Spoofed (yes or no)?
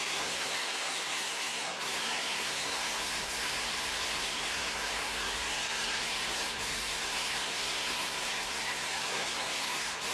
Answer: yes